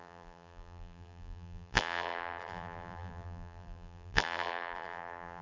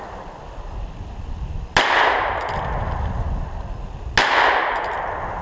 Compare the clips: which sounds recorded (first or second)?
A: second